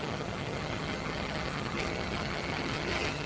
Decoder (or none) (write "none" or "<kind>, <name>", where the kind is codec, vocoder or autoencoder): vocoder, HiFi-GAN